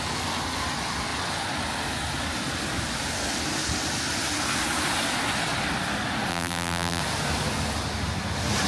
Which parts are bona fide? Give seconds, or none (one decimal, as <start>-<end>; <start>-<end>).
0.0-6.3; 7.0-8.7